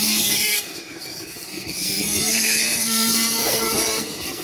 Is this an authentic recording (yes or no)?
no